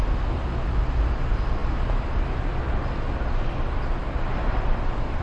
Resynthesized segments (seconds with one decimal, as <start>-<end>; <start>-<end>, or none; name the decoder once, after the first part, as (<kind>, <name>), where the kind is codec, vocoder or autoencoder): 4.0-5.2 (vocoder, BigVGAN v2)